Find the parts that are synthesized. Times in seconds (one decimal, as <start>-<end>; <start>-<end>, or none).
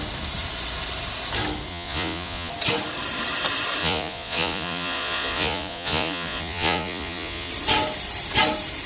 1.7-2.5; 3.8-7.5